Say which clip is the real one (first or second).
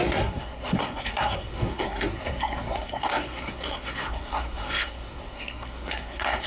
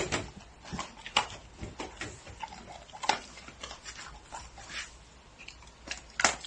second